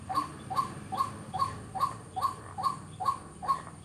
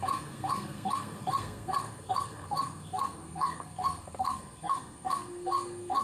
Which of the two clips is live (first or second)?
first